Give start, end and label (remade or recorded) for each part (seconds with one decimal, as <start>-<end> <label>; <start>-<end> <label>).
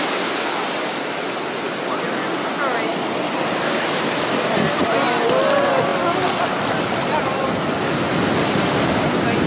0.0-9.5 recorded